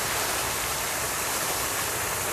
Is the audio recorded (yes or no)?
yes